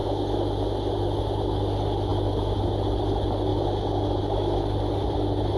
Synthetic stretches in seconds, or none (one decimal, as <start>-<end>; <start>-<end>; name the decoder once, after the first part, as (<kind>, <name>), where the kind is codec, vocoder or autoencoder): none